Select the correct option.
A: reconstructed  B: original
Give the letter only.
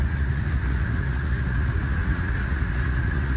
A